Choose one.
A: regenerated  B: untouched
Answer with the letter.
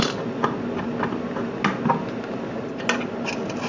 B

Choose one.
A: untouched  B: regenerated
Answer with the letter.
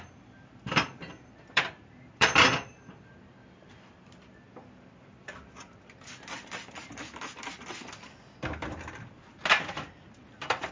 B